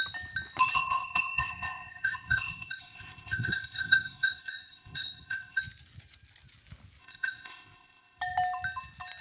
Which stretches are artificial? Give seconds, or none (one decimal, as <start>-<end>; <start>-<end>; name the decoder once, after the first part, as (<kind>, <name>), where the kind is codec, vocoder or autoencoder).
0.7-5.6 (codec, ZipCodec); 7.0-8.2